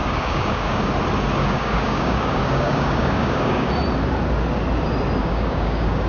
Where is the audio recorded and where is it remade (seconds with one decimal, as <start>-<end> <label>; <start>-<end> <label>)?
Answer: 0.0-0.9 remade; 0.9-1.4 recorded; 1.4-3.7 remade; 3.7-5.2 recorded; 5.2-6.1 remade